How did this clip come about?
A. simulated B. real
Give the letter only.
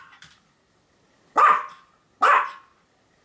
B